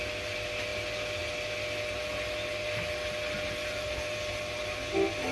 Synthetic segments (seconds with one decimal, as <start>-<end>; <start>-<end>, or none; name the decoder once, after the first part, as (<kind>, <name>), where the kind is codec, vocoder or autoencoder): none

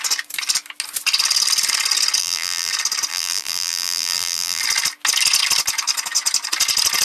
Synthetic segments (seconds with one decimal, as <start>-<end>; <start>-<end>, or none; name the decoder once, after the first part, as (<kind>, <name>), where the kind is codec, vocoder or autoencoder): 2.2-2.7 (vocoder, BigVGAN v2); 3.1-4.6

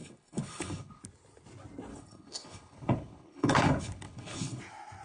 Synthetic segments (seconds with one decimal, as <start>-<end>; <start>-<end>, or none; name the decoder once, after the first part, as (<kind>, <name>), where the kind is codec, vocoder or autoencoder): 0.0-1.0 (codec, HILCodec); 1.9-4.6

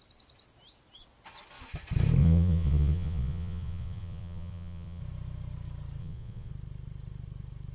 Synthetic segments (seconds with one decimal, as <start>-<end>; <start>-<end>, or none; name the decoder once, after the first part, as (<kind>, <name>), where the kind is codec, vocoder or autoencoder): 2.2-5.0 (vocoder, Vocos); 6.0-6.5

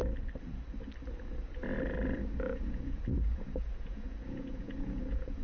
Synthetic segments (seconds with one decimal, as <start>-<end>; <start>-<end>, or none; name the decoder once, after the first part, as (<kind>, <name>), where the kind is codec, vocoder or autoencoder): 2.2-5.4 (vocoder, Vocos)